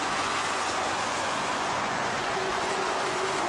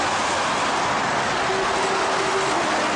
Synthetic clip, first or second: first